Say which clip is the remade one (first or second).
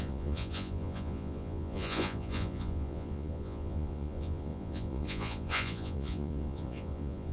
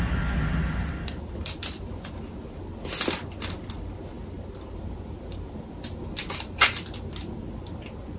first